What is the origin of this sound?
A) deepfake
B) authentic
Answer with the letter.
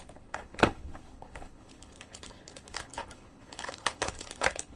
A